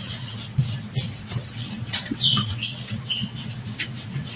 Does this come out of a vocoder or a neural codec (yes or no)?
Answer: yes